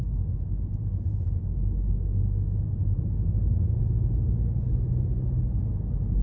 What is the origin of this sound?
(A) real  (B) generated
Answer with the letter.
A